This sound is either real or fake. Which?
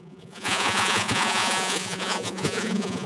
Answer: fake